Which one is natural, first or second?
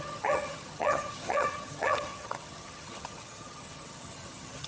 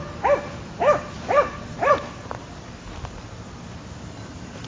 second